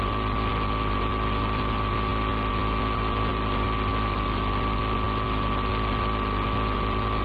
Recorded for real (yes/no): yes